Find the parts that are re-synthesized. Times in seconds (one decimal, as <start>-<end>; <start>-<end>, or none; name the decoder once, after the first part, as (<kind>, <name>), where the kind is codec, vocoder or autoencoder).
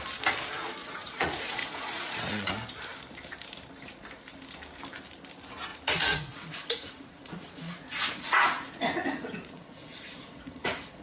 0.8-2.5 (vocoder, Vocos); 5.7-11.0